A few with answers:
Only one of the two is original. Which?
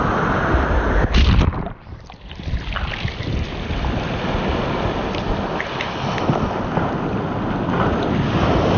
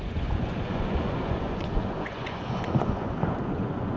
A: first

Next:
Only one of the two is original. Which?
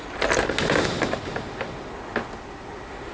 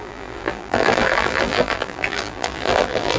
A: first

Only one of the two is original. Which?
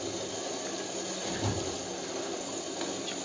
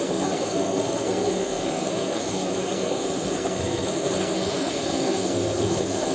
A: first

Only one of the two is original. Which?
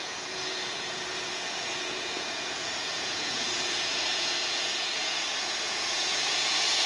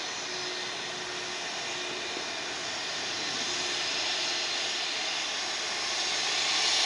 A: second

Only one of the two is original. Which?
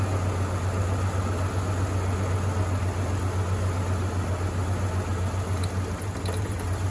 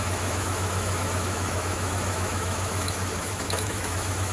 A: first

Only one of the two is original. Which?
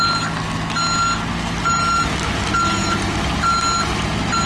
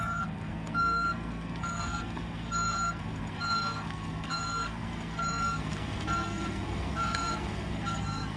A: first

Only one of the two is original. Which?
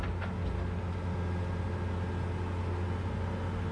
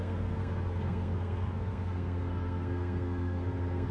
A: first